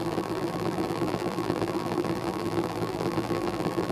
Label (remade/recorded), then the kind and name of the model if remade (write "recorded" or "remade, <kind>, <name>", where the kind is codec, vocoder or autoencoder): remade, vocoder, BigVGAN v2